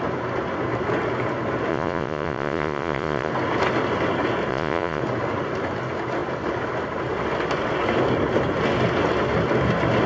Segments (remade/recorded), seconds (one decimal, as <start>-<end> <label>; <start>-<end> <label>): 0.0-1.7 recorded; 1.7-3.3 remade; 3.3-4.5 recorded; 4.5-5.0 remade; 5.0-10.1 recorded